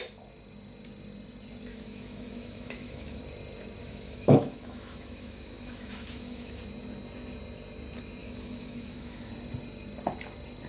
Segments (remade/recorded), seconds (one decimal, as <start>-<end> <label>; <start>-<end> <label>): 0.0-1.7 recorded; 1.7-3.2 remade; 3.2-3.8 recorded; 3.8-6.6 remade; 6.6-8.2 recorded; 8.2-9.3 remade; 9.3-10.7 recorded